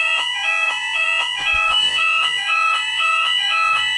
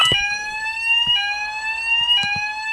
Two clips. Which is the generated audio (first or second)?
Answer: first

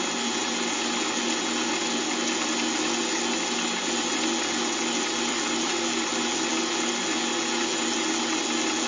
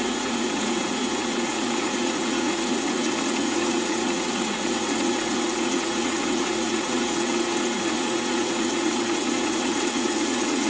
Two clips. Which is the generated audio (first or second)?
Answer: second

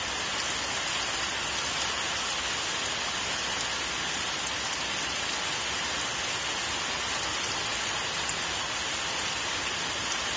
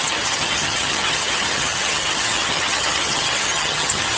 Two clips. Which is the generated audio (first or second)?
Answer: second